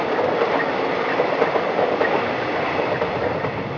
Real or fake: real